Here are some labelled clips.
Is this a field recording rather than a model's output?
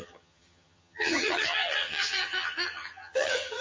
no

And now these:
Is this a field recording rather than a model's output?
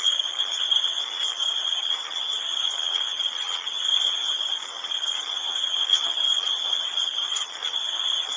no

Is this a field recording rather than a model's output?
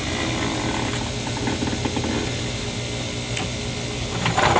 yes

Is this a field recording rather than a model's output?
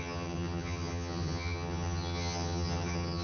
no